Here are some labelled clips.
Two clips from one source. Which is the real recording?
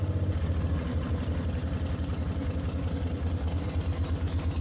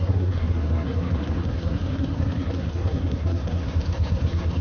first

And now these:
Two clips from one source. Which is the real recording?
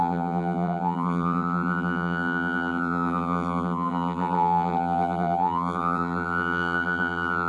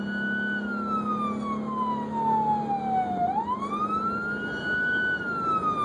second